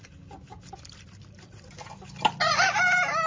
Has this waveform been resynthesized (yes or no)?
no